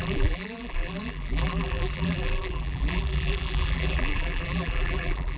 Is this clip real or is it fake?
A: fake